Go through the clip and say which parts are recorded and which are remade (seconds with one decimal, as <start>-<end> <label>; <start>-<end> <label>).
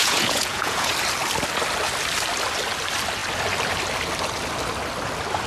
0.0-0.9 remade; 0.9-5.5 recorded